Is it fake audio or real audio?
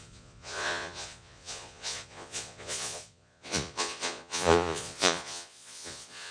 fake